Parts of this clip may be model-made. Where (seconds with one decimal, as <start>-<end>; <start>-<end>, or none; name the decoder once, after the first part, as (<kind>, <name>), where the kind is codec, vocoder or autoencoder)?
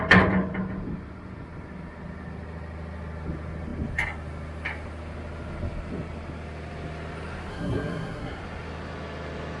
7.5-8.4 (codec, SNAC)